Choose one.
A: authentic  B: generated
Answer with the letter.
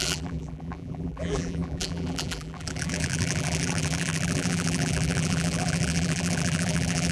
B